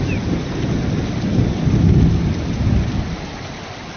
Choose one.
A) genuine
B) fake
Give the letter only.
A